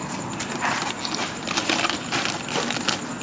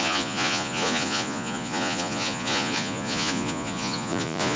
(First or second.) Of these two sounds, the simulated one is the second